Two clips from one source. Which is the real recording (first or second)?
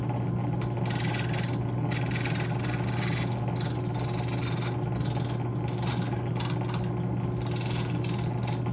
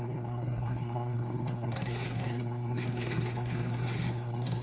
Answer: first